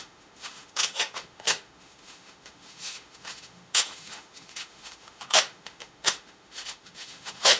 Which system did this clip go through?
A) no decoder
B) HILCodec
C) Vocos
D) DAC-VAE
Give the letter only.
D